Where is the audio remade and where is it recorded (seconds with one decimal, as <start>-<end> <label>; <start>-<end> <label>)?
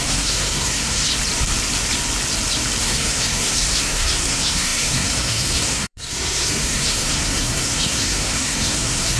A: 0.0-1.1 remade; 1.1-2.8 recorded; 2.8-9.2 remade